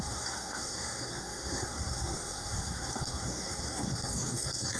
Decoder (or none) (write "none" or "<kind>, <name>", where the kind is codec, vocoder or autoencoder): codec, SNAC